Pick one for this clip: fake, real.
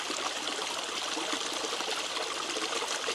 real